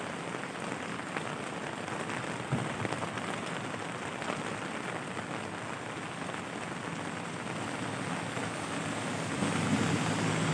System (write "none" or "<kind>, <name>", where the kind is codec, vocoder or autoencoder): none